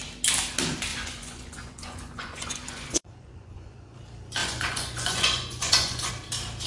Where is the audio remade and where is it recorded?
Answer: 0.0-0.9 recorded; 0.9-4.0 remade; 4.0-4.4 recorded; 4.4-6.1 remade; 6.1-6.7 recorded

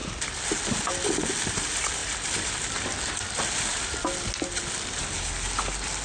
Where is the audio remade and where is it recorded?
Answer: 0.0-6.0 recorded

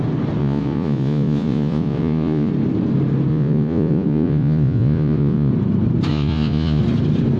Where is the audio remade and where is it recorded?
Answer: 0.0-0.4 recorded; 0.4-2.5 remade; 2.5-3.3 recorded; 3.3-5.5 remade; 5.5-6.1 recorded; 6.1-6.8 remade; 6.8-7.4 recorded

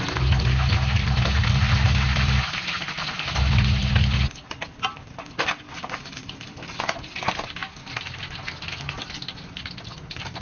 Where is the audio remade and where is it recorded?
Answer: 0.0-10.4 recorded

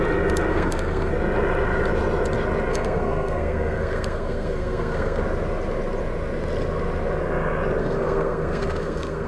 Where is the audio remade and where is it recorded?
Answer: 0.0-0.5 recorded; 0.5-1.1 remade; 1.1-2.7 recorded; 2.7-5.2 remade; 5.2-7.8 recorded; 7.8-9.3 remade